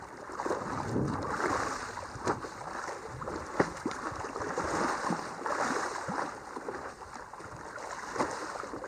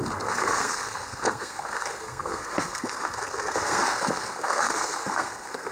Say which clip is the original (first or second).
first